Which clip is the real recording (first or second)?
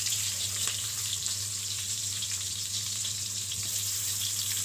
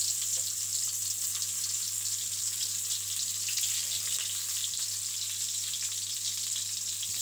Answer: second